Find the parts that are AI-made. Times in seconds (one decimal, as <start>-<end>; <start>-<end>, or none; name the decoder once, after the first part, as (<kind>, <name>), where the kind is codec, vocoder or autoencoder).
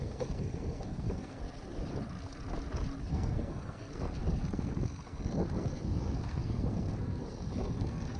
0.0-1.4 (codec, SNAC); 3.1-8.2